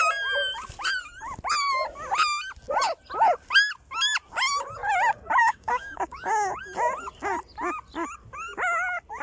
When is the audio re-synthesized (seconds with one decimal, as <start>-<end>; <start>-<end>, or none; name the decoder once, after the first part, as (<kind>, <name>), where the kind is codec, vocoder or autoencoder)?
5.4-6.6 (codec, DAC)